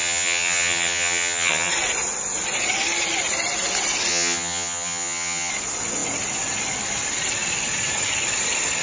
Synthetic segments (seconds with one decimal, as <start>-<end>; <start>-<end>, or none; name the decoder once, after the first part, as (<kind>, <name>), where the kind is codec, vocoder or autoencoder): 0.0-1.7 (vocoder, HiFi-GAN); 4.1-5.5